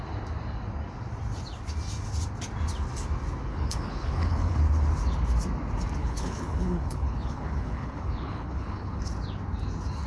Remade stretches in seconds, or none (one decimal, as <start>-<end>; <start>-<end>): 3.5-4.6; 6.0-9.0